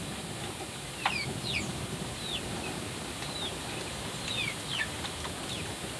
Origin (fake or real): real